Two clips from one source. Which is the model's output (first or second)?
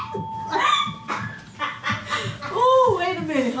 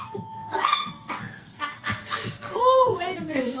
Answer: second